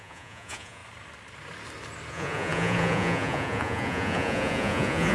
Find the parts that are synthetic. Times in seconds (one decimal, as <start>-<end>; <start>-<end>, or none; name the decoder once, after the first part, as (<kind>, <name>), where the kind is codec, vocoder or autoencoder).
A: 0.0-0.8 (vocoder, Vocos); 2.1-5.1